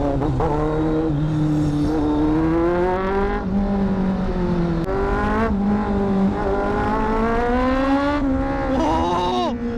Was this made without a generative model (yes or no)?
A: yes